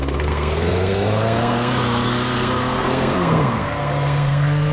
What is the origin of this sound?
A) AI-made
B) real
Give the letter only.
A